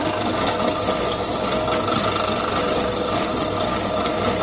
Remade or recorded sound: recorded